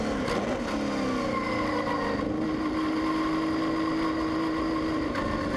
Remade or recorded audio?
recorded